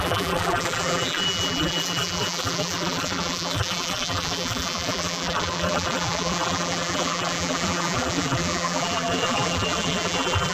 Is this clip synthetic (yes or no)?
yes